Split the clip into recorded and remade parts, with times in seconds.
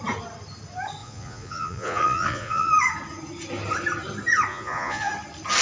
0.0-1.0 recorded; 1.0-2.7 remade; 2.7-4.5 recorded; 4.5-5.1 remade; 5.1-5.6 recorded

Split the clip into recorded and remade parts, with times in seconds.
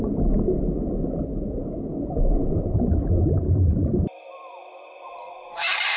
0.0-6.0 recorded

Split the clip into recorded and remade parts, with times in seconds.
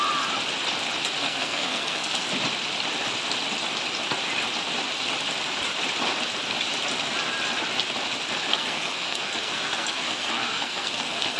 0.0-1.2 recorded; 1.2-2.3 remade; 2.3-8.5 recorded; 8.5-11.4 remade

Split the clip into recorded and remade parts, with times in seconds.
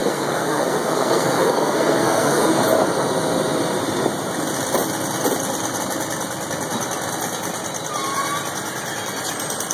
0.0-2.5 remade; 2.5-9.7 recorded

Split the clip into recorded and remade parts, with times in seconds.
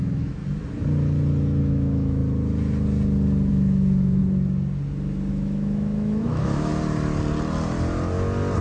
0.0-0.4 remade; 0.4-1.6 recorded; 1.6-2.2 remade; 2.2-3.5 recorded; 3.5-4.2 remade; 4.2-5.3 recorded; 5.3-6.7 remade; 6.7-8.6 recorded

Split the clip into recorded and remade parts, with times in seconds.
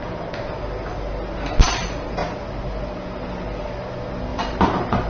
0.0-4.3 recorded; 4.3-5.1 remade